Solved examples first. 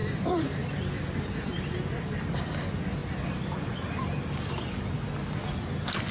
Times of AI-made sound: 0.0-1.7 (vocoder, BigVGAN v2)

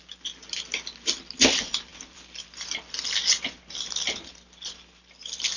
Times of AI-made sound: 1.9-3.0 (vocoder, BigVGAN v2)

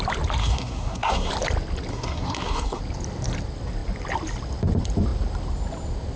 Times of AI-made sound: 0.4-1.3 (codec, SNAC); 1.9-2.8

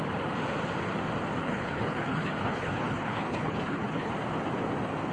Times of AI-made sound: 1.4-4.1 (codec, HILCodec)

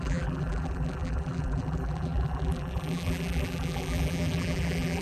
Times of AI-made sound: 0.0-5.0 (vocoder, BigVGAN v2)

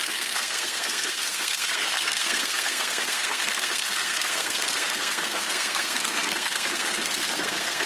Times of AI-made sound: 0.0-7.9 (codec, SNAC)

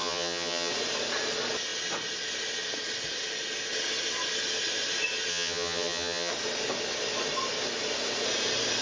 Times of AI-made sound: 0.0-0.7 (vocoder, HiFi-GAN); 5.3-6.3

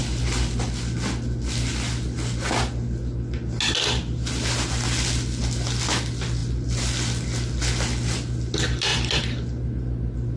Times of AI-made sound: none